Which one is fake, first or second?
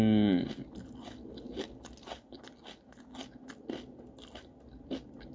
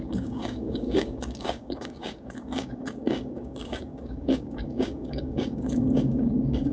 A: second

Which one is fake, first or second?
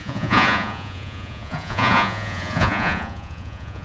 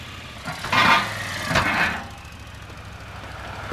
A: first